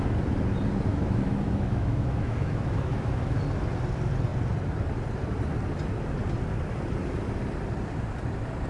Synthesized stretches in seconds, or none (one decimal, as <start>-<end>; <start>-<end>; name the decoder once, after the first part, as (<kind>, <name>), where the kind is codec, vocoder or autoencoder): 0.9-3.4 (autoencoder, DAC-VAE)